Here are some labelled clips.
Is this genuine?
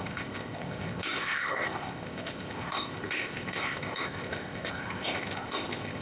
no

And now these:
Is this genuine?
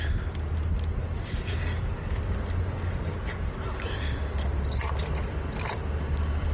yes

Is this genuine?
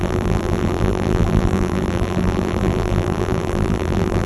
no